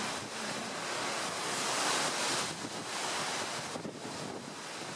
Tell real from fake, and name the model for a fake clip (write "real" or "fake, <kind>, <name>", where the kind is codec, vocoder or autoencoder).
real